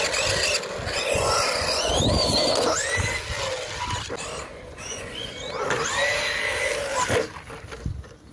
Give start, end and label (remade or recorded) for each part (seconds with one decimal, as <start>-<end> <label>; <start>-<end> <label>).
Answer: 0.0-0.9 recorded; 0.9-1.9 remade; 1.9-4.5 recorded; 4.5-5.3 remade; 5.3-8.3 recorded